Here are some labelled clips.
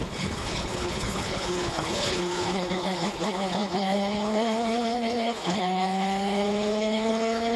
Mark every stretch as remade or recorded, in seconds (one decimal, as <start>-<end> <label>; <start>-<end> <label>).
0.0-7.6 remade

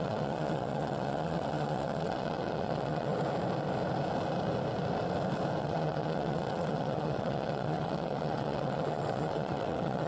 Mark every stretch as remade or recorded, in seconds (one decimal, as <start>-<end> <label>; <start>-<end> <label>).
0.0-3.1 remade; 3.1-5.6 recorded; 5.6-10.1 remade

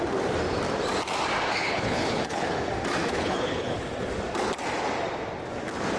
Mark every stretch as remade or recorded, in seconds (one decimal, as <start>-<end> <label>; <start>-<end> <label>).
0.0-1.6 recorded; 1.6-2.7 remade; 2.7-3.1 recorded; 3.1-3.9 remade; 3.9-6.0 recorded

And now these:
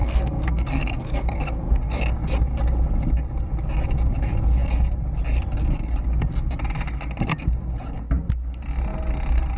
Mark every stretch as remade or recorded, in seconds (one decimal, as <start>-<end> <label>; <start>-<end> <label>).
0.0-2.0 remade; 2.0-9.6 recorded

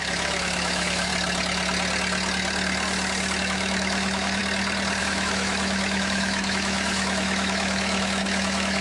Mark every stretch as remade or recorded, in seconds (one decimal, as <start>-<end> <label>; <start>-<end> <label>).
0.0-1.1 remade; 1.1-3.4 recorded; 3.4-4.4 remade; 4.4-5.0 recorded; 5.0-8.8 remade

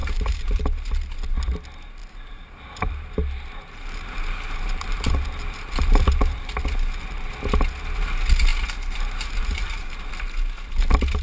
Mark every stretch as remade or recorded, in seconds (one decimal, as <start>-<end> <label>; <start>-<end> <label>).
0.0-0.6 remade; 0.6-2.0 recorded; 2.0-6.6 remade; 6.6-8.5 recorded; 8.5-10.1 remade; 10.1-11.2 recorded

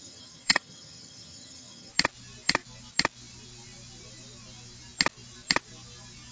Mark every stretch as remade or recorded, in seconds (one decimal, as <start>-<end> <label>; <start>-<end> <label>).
0.0-1.9 remade; 1.9-6.3 recorded

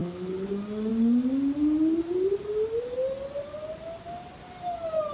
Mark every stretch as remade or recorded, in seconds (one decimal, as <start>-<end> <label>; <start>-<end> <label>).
0.0-0.5 remade; 0.5-5.1 recorded